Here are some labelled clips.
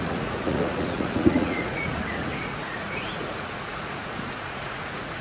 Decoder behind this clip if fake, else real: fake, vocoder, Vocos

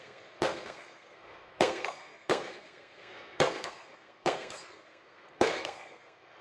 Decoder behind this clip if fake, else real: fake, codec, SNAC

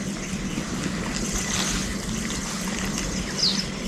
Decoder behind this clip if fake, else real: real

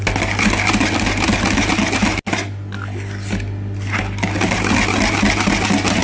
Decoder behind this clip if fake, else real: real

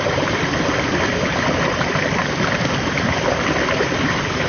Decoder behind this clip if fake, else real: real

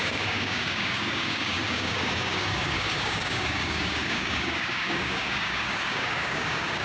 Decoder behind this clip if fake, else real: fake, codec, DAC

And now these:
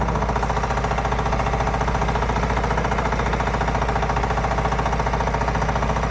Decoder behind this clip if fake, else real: real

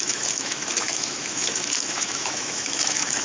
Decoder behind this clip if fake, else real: fake, autoencoder, DAC-VAE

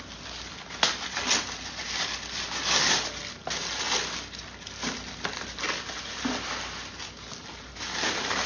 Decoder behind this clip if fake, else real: real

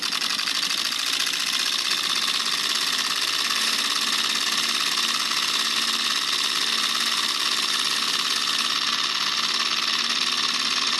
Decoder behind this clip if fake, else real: real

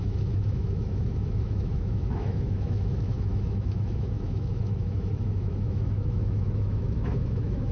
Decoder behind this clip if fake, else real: fake, autoencoder, DAC-VAE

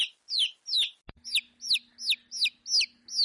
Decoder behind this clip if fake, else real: real